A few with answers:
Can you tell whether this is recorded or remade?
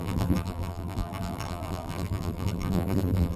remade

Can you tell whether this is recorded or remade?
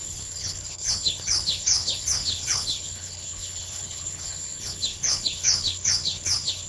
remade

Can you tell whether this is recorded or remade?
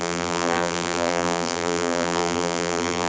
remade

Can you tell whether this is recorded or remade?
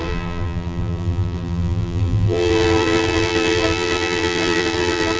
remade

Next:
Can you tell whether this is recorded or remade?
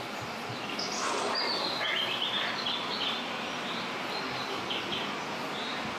recorded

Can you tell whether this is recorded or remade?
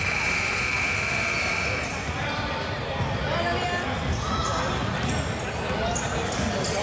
recorded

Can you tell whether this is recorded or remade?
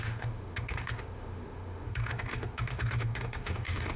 remade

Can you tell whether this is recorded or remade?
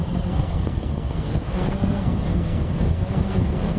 remade